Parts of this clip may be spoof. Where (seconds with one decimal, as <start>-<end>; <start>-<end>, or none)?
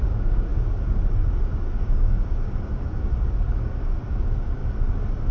0.0-4.6